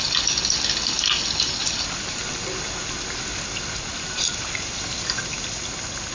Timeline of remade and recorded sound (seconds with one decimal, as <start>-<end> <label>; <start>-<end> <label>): 0.0-1.6 recorded; 1.6-2.2 remade; 2.2-3.9 recorded; 3.9-4.5 remade; 4.5-6.1 recorded